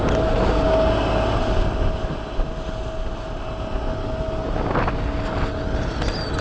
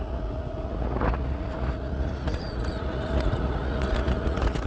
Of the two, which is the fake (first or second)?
second